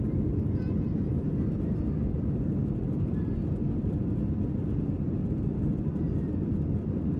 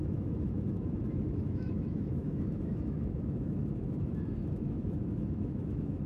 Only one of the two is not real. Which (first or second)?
second